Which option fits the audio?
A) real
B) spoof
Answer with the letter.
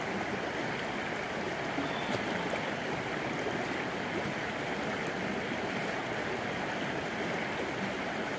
A